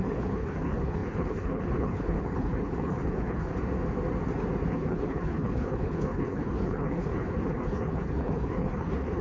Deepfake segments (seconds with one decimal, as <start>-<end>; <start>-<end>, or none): 0.0-3.5; 4.7-9.2